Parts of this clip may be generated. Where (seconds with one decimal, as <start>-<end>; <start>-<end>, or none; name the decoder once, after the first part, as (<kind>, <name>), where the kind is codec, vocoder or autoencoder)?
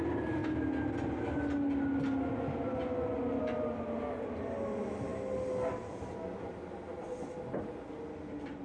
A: none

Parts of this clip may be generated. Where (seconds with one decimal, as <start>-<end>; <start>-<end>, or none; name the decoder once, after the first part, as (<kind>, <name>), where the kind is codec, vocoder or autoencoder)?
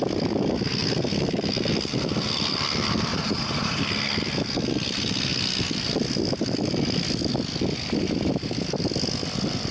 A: 3.1-3.8 (vocoder, Vocos)